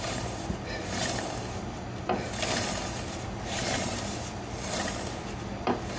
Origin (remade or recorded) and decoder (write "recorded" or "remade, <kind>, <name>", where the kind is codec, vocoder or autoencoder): recorded